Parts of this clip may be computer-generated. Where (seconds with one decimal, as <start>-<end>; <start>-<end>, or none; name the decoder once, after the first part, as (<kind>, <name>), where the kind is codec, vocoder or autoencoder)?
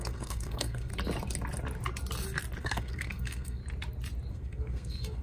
0.0-0.9 (codec, SNAC); 2.6-3.6; 4.3-5.2